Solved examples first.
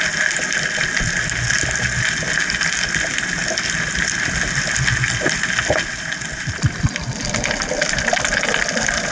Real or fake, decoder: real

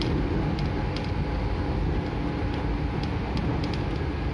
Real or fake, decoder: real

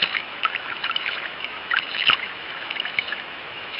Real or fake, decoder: fake, autoencoder, DAC-VAE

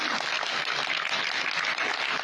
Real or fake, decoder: real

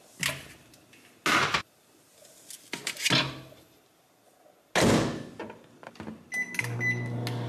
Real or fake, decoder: real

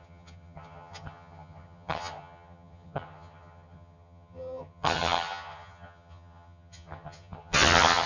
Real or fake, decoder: fake, vocoder, HiFi-GAN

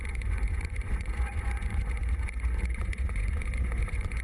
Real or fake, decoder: fake, vocoder, Vocos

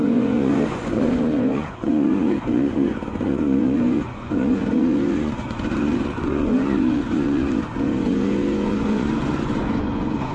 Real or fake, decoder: fake, vocoder, Vocos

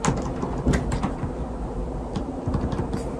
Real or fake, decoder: real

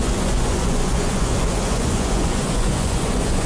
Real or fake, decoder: fake, vocoder, Vocos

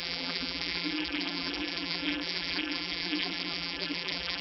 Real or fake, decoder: fake, vocoder, BigVGAN v2